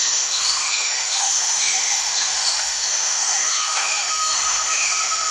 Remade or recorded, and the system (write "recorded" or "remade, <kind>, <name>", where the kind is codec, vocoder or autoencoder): remade, autoencoder, DAC-VAE